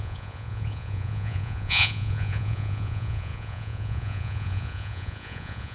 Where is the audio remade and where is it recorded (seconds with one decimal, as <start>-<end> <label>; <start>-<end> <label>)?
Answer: 0.0-5.7 remade